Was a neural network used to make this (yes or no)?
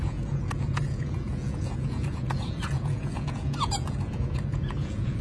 yes